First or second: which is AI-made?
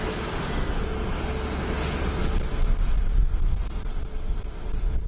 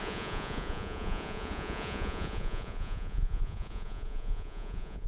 second